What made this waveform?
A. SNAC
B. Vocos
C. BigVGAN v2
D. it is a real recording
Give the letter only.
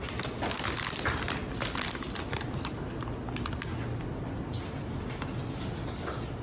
D